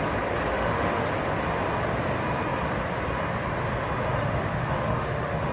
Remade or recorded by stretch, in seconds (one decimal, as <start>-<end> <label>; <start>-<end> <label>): 0.0-0.5 recorded; 0.5-1.1 remade; 1.1-4.1 recorded; 4.1-5.5 remade